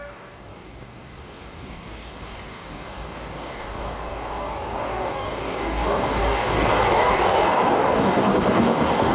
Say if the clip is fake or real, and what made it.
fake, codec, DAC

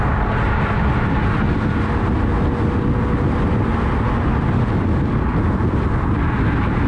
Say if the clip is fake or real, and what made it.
real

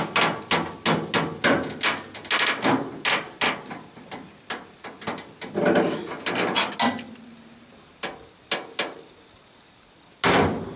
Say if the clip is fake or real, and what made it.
real